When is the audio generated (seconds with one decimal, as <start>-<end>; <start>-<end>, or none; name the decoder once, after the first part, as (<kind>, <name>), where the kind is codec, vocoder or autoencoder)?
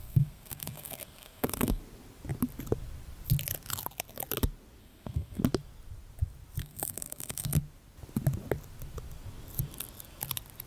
0.0-1.8 (codec, SNAC); 4.8-5.4; 6.6-7.6